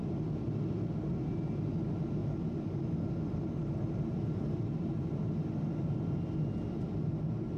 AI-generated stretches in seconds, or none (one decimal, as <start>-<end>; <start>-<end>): 2.2-2.8; 3.6-4.6